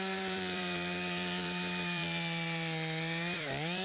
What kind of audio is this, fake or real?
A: fake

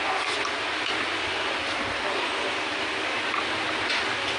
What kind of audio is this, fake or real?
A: real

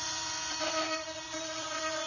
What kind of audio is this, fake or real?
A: fake